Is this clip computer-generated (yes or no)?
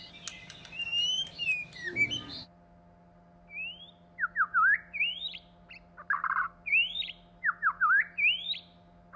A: no